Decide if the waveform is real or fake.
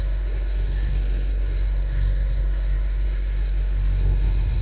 fake